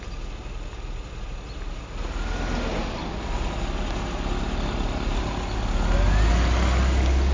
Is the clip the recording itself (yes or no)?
yes